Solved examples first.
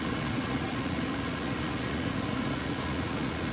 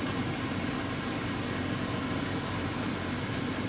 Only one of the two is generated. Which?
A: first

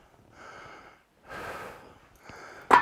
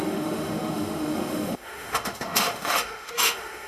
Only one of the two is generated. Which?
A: second